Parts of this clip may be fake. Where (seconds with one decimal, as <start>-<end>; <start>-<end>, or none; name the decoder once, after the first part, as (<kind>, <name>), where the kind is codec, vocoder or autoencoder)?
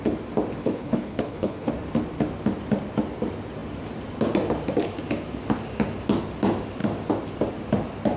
0.6-1.7 (codec, HILCodec)